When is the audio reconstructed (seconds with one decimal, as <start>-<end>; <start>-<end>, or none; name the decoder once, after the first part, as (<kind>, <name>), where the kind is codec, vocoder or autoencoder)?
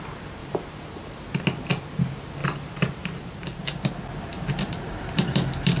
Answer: 0.4-1.0 (vocoder, BigVGAN v2); 2.4-3.6; 4.3-4.9